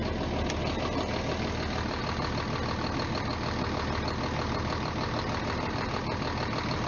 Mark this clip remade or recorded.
recorded